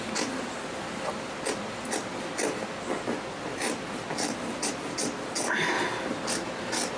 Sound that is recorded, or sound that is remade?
recorded